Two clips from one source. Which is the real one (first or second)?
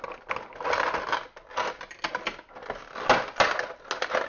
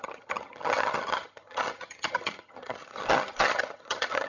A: first